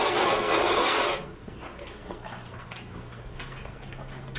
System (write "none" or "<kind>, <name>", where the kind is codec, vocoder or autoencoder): codec, SNAC